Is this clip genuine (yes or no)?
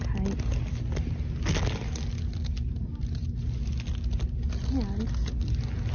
yes